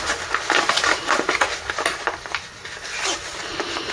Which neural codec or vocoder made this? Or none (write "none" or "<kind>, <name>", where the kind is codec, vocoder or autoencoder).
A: none